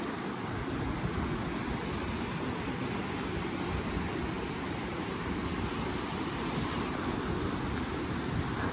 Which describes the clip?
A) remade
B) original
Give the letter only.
B